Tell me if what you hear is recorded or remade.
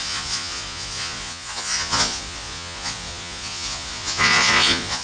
remade